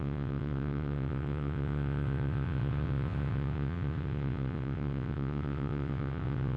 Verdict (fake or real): fake